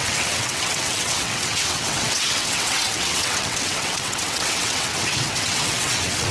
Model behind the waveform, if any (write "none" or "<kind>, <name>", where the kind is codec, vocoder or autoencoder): vocoder, WaveNeXt